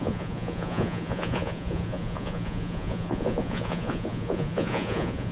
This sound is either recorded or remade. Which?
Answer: remade